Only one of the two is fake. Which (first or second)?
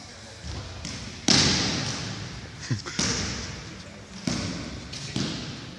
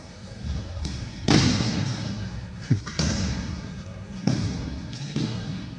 second